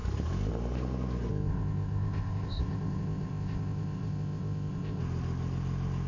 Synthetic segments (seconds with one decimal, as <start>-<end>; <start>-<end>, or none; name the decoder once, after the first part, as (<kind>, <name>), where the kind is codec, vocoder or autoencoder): 1.3-5.0 (codec, ZipCodec)